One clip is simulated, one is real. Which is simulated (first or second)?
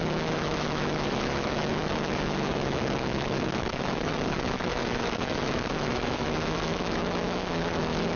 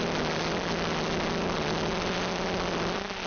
first